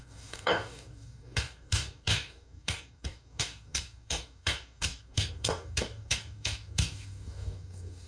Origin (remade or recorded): remade